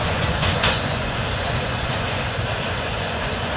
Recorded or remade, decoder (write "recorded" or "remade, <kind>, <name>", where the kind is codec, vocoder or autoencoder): remade, vocoder, Vocos